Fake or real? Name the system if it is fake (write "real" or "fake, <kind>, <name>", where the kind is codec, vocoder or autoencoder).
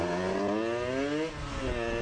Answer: real